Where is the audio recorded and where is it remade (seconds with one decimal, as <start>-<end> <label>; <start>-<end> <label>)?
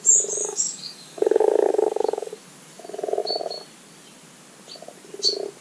0.0-0.4 recorded; 0.4-2.3 remade; 2.3-5.6 recorded